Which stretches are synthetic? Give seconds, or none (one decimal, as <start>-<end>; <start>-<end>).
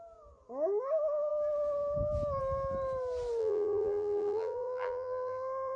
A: 3.4-5.8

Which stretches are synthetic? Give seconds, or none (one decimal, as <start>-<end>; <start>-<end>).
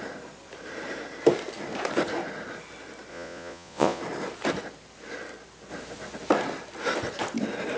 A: 3.1-4.0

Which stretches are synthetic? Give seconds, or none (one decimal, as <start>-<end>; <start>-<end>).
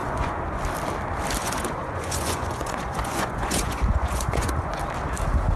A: 0.0-0.6; 1.4-4.8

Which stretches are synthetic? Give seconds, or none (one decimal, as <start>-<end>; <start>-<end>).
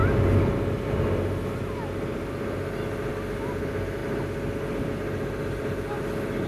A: none